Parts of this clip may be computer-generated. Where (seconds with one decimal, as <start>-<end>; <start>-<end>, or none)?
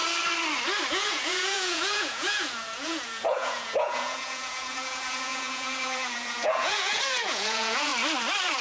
0.9-7.9